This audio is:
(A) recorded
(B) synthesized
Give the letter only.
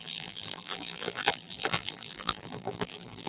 B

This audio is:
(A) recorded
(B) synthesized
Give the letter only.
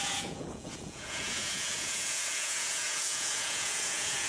B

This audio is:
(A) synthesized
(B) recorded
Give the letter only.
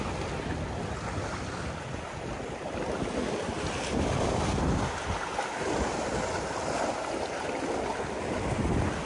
B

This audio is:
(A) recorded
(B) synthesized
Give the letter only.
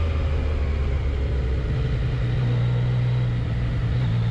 A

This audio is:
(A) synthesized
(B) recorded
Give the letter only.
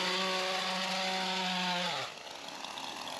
B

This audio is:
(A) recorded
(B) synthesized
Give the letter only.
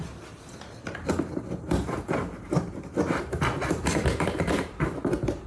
B